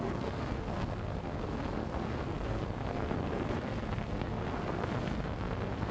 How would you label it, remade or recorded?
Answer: remade